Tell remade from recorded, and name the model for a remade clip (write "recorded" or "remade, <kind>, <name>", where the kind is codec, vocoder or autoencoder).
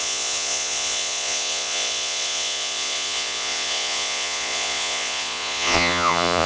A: remade, vocoder, Vocos